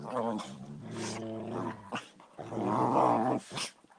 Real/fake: real